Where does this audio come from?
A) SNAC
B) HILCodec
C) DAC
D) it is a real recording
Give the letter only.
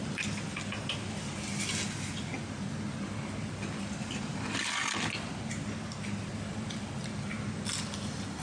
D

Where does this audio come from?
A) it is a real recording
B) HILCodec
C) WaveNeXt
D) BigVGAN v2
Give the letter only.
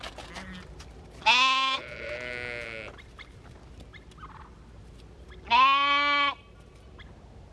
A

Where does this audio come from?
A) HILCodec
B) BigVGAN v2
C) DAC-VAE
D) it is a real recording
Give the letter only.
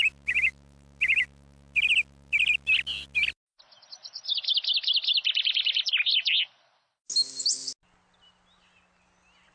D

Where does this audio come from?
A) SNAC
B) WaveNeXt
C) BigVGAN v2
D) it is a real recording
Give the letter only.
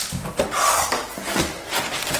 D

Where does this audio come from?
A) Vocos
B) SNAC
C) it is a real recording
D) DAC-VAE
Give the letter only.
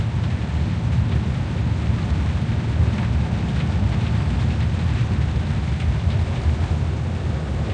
C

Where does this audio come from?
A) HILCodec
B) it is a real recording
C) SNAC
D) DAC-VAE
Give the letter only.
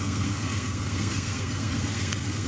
C